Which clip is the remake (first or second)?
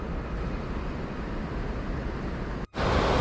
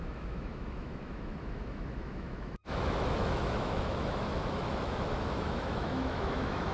second